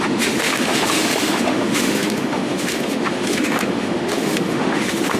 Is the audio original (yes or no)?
no